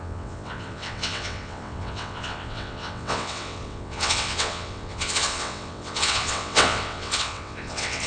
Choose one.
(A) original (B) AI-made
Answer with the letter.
B